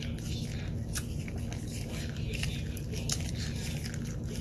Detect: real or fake real